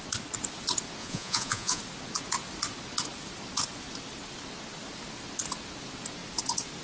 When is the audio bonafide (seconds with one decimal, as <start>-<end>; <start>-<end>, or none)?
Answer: 0.0-1.0; 1.8-6.8